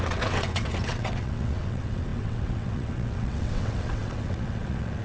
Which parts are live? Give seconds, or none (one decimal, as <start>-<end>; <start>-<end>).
none